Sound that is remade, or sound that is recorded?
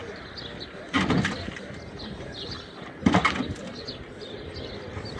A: recorded